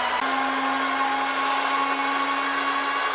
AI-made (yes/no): no